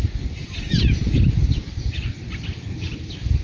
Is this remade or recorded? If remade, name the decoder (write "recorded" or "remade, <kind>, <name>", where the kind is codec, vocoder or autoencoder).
recorded